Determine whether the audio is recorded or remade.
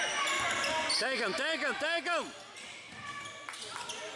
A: recorded